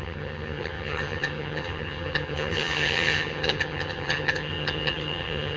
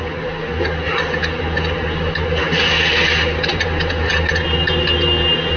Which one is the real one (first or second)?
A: second